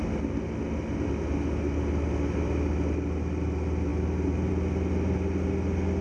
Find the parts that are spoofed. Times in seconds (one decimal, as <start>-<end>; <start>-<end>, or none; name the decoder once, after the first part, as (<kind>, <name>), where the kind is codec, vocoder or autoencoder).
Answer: none